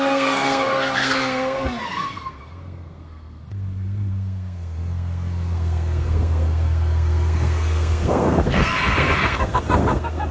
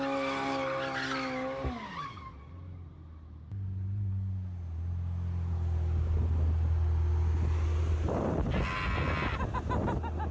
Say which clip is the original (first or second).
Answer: second